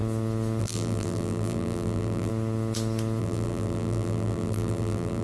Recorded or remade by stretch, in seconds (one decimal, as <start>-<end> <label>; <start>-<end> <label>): 0.0-0.6 recorded; 0.6-2.3 remade; 2.3-3.2 recorded; 3.2-5.2 remade